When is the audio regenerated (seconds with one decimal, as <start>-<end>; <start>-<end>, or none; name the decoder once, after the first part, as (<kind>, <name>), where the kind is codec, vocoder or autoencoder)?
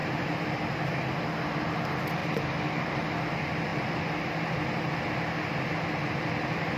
2.2-3.3 (vocoder, BigVGAN v2)